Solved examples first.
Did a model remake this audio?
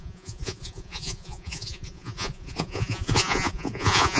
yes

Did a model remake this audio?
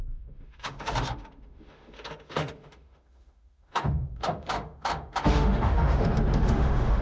yes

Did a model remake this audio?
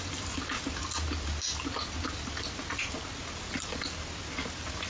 no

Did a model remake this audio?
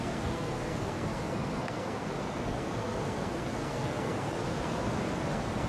yes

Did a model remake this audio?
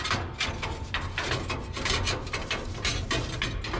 no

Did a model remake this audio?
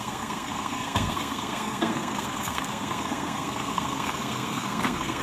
yes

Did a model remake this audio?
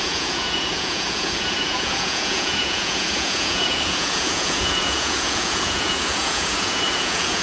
yes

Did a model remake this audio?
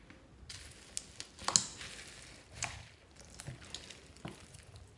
no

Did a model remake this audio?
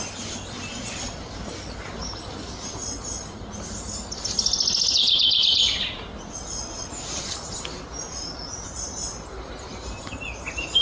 no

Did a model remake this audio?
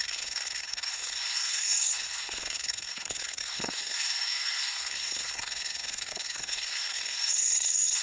yes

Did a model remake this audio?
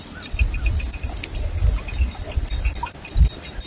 no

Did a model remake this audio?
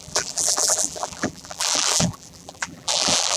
yes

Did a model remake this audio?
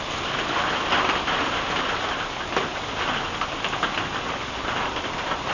no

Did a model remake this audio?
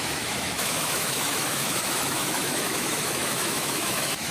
yes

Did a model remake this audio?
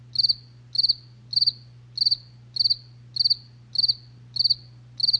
no